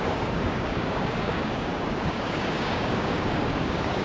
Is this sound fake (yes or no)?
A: yes